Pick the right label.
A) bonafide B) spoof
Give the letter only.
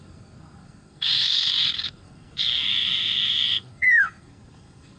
B